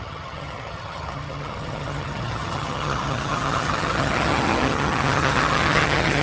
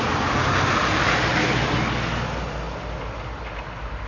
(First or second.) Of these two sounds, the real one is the second